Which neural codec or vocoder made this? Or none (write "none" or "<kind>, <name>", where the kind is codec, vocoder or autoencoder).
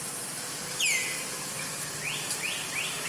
none